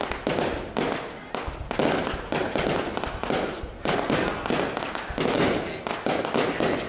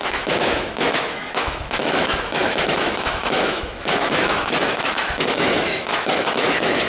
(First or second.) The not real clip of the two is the second